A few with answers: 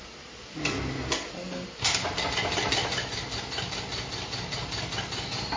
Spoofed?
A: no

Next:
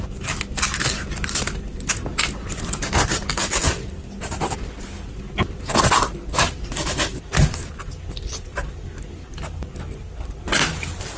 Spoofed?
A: no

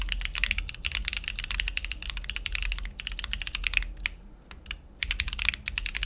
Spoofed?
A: no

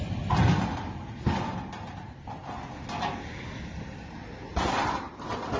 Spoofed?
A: no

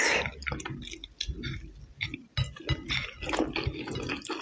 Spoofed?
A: no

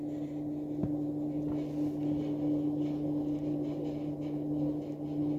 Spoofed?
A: no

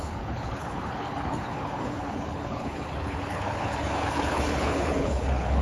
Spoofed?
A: yes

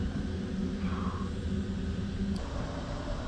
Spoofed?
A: no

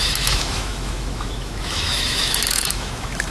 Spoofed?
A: yes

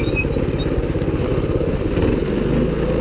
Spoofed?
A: no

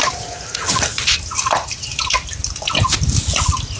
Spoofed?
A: yes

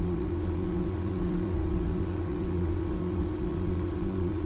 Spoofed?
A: yes